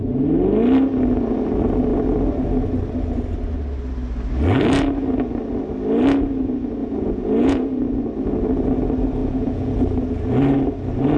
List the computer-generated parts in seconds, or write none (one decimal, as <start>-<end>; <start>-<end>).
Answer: 6.8-7.8; 9.2-9.7